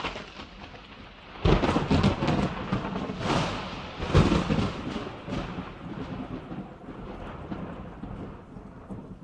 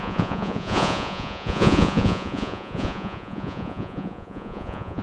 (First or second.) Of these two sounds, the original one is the first